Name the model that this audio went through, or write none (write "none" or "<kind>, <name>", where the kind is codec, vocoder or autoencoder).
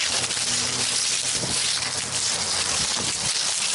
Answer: none